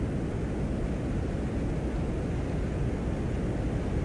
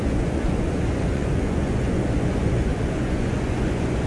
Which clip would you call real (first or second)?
first